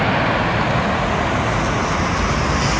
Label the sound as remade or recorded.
recorded